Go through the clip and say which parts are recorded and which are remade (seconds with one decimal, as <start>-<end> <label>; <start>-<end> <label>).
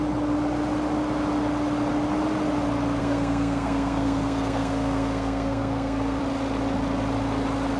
0.0-3.0 recorded; 3.0-6.2 remade; 6.2-7.8 recorded